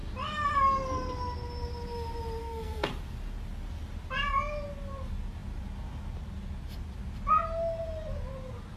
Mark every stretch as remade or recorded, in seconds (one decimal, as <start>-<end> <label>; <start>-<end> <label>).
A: 0.0-2.4 recorded; 2.4-2.9 remade; 2.9-8.8 recorded